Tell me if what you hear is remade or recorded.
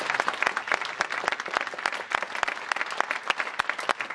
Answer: recorded